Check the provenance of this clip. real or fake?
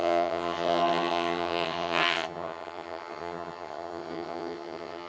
fake